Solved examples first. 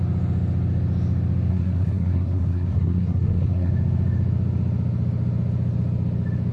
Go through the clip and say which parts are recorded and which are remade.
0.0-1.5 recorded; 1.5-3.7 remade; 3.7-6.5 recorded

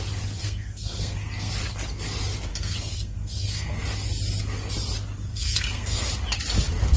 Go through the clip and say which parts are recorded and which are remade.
0.0-0.4 recorded; 0.4-1.5 remade; 1.5-2.5 recorded; 2.5-3.8 remade; 3.8-5.3 recorded; 5.3-6.1 remade; 6.1-7.0 recorded